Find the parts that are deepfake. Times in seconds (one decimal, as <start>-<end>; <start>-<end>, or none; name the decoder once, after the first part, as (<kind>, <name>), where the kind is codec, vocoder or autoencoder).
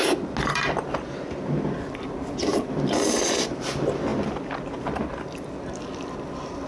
none